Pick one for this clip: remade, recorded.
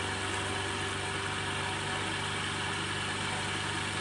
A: recorded